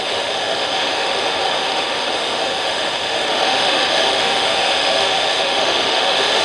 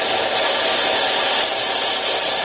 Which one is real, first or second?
second